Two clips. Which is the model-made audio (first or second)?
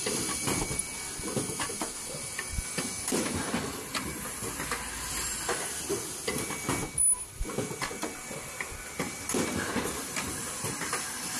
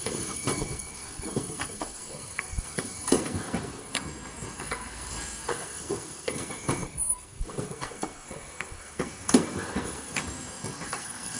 second